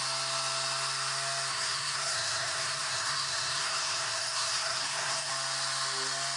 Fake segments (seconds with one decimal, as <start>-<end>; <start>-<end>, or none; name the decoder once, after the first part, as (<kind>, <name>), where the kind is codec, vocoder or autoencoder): 1.5-5.3 (codec, SNAC)